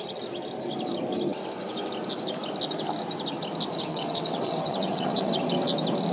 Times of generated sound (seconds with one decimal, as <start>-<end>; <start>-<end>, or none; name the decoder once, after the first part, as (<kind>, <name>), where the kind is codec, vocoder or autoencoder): 3.9-5.3 (vocoder, WaveNeXt)